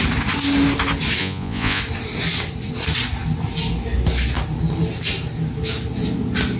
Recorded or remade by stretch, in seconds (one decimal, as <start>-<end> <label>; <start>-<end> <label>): 0.0-1.2 recorded; 1.2-1.8 remade; 1.8-6.6 recorded

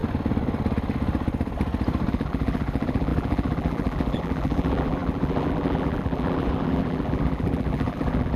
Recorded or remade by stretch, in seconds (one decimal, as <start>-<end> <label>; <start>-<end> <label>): 0.0-2.1 recorded; 2.1-8.4 remade

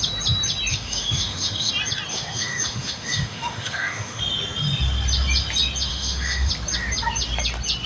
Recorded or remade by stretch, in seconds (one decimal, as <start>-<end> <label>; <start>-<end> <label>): 0.0-0.7 recorded; 0.7-1.7 remade; 1.7-2.1 recorded; 2.1-4.2 remade; 4.2-5.9 recorded; 5.9-6.5 remade; 6.5-7.9 recorded